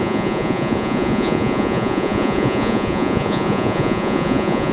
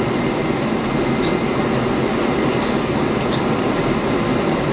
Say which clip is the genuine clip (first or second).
second